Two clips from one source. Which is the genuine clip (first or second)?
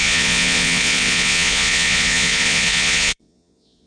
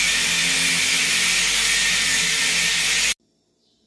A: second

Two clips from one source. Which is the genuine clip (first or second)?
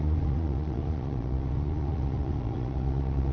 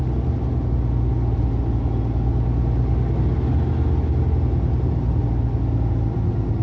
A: second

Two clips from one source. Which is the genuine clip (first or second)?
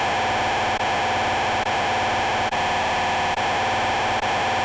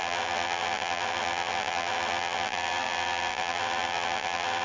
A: first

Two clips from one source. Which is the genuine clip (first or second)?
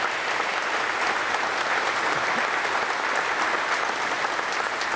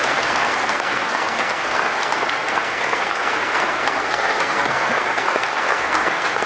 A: first